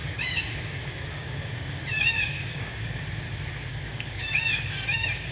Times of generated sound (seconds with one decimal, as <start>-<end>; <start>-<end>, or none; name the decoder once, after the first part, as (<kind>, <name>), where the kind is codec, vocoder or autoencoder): 0.0-3.2 (codec, DAC); 3.7-5.3